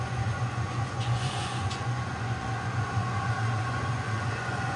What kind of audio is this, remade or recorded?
remade